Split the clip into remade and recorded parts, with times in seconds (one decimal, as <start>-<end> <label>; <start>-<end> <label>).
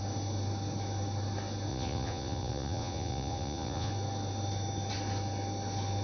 0.0-1.7 recorded; 1.7-3.9 remade; 3.9-6.0 recorded